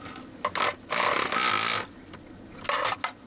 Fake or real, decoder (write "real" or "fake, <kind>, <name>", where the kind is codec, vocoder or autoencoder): real